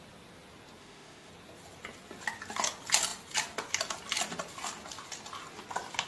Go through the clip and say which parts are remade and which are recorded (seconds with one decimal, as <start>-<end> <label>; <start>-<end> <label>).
0.0-0.8 recorded; 0.8-1.3 remade; 1.3-6.1 recorded